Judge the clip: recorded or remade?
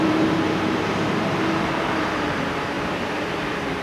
remade